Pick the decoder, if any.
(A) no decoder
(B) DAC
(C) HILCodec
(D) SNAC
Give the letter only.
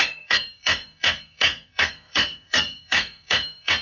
D